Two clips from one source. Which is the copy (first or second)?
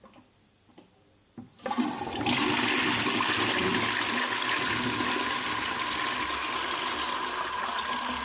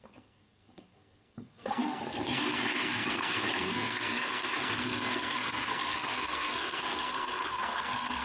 second